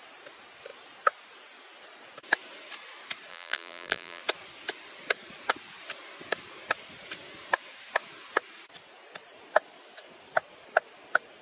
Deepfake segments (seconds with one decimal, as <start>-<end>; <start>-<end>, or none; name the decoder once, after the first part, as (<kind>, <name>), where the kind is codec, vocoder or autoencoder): 3.3-4.2 (vocoder, BigVGAN v2)